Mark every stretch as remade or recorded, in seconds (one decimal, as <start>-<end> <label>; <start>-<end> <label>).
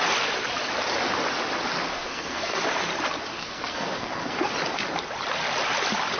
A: 0.0-1.9 recorded; 1.9-2.6 remade; 2.6-3.3 recorded; 3.3-4.5 remade; 4.5-6.2 recorded